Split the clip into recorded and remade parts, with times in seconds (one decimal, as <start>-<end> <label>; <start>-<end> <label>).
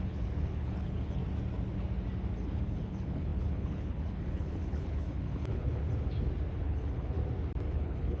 0.0-1.2 remade; 1.2-2.4 recorded; 2.4-5.8 remade; 5.8-6.6 recorded; 6.6-7.2 remade; 7.2-7.7 recorded; 7.7-8.2 remade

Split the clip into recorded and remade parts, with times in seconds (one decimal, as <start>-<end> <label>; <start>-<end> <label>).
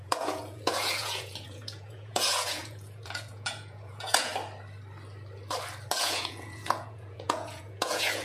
0.0-4.3 remade; 4.3-6.0 recorded; 6.0-8.2 remade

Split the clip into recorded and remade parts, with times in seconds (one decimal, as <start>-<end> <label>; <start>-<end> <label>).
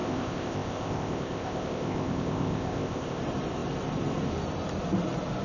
0.0-3.2 remade; 3.2-5.4 recorded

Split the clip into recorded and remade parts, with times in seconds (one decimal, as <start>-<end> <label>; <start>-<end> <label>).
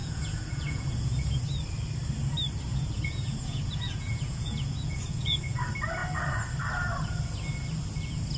0.0-1.4 remade; 1.4-2.7 recorded; 2.7-5.6 remade; 5.6-8.4 recorded